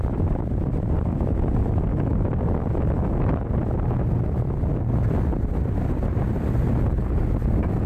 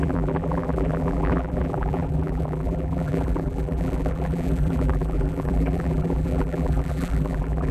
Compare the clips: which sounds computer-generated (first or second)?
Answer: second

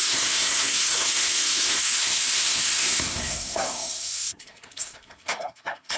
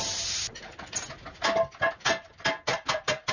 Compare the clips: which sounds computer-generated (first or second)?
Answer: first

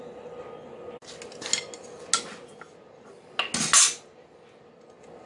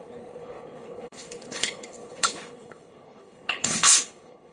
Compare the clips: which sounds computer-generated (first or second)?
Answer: second